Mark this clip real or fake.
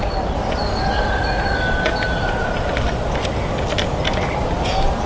real